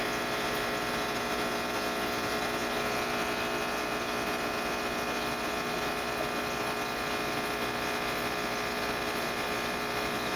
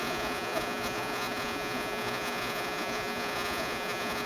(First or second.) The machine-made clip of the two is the second